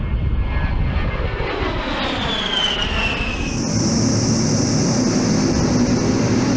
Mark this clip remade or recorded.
recorded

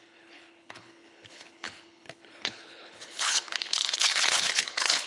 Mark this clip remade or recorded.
remade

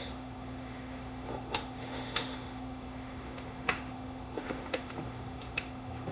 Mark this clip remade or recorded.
remade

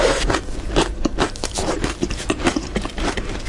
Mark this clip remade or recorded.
remade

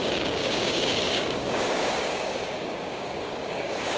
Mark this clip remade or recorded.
remade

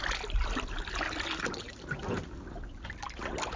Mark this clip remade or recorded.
recorded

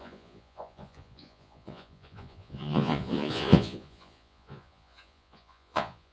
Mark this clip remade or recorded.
remade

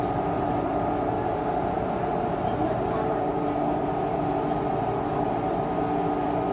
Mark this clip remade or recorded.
remade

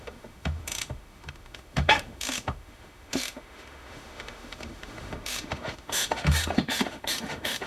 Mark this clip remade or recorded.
remade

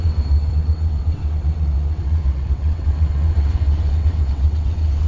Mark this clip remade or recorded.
remade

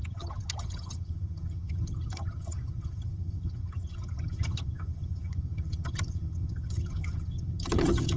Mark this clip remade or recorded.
remade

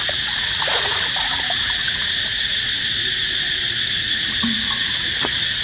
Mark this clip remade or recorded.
remade